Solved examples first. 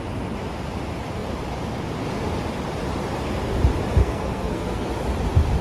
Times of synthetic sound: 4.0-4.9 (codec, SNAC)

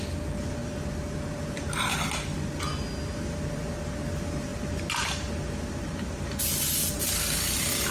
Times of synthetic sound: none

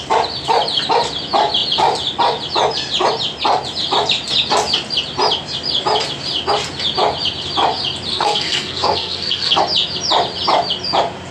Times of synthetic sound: 8.1-9.6 (codec, SNAC)